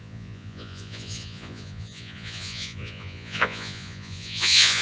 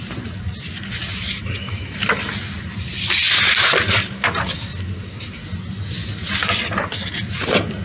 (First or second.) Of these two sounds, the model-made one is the first